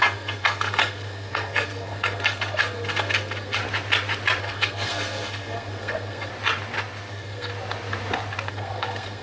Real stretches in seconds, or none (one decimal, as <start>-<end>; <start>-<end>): 3.6-4.4; 6.3-7.1; 7.5-8.5